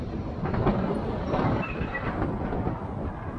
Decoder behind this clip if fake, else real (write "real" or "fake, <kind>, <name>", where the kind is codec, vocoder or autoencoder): fake, vocoder, BigVGAN v2